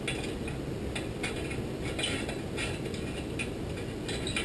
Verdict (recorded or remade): recorded